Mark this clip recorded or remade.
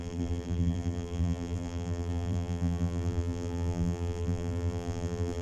remade